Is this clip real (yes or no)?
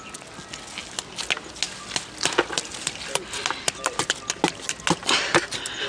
yes